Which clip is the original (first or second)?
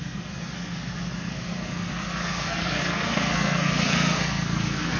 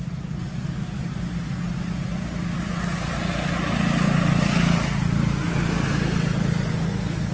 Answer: second